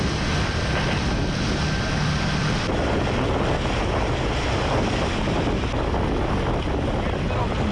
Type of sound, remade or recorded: recorded